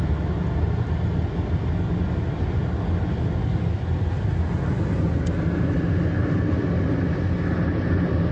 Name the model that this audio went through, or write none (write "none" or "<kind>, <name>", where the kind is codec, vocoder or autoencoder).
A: none